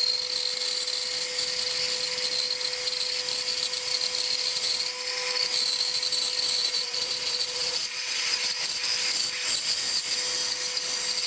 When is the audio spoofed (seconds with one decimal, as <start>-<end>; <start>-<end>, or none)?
6.6-8.4